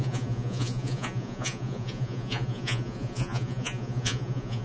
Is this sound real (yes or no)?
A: no